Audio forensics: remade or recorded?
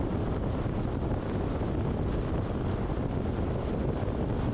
recorded